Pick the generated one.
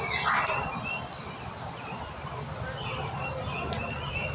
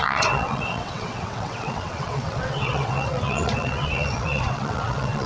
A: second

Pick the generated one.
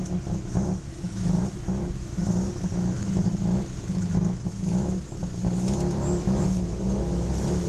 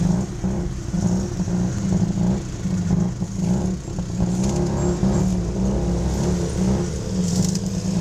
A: first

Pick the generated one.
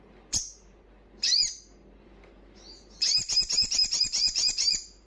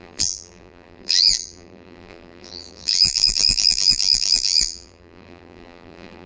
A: second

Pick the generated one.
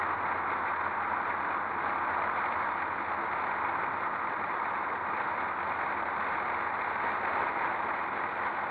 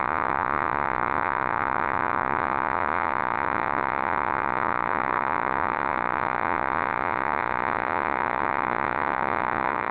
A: second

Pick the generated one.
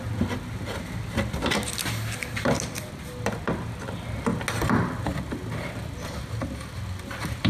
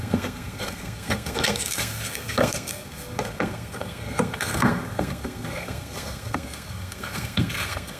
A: second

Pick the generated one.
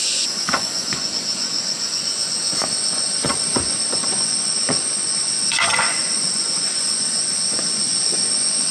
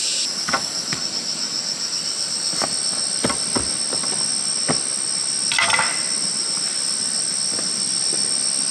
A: first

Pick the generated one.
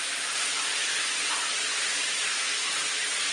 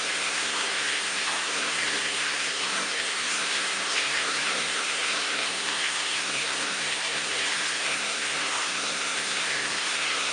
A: second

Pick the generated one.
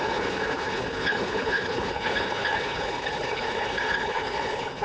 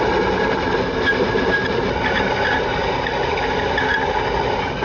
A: first